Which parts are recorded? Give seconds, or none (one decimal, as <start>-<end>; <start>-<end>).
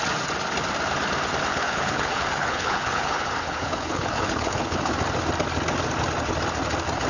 0.0-1.5; 4.9-7.1